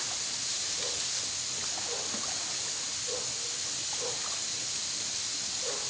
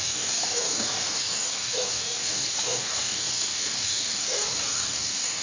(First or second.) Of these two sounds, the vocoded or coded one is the second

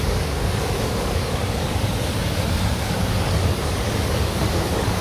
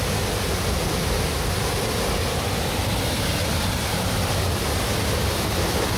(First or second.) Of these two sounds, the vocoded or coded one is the first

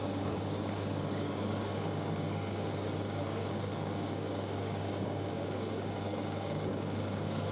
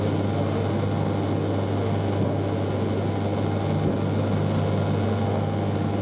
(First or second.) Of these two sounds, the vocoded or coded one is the first